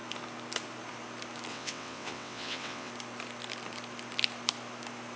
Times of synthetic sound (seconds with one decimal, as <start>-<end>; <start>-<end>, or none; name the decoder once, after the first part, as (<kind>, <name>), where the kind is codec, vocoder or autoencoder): 1.5-2.9 (vocoder, WaveNeXt)